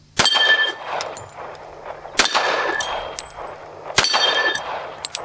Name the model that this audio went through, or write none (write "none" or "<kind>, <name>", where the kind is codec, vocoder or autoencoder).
none